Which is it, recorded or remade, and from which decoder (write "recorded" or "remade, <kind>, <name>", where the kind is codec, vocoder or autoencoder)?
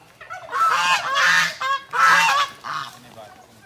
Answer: recorded